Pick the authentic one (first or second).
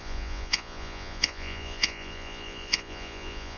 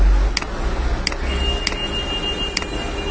second